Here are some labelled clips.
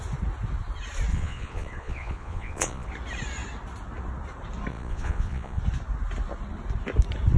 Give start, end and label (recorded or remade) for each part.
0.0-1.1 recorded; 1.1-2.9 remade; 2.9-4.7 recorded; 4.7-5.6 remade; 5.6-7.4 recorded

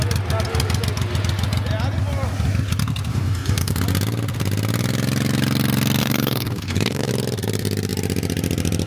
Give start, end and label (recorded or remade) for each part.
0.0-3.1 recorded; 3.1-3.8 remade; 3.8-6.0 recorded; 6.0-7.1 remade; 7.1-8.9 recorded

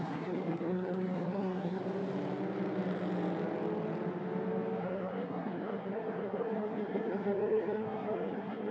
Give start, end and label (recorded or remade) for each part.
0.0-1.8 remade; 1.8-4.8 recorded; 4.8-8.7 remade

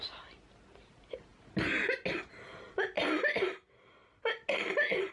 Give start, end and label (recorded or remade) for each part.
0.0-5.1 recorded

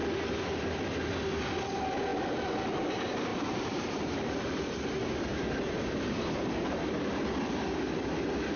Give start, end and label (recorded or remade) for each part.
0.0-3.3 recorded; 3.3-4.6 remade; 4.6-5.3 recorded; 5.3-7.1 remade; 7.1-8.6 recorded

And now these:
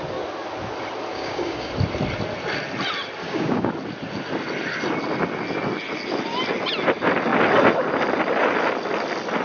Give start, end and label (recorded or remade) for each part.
0.0-1.1 recorded; 1.1-1.7 remade; 1.7-3.2 recorded; 3.2-3.7 remade; 3.7-9.4 recorded

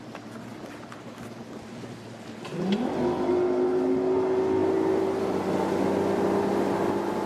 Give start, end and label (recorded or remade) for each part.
0.0-7.3 recorded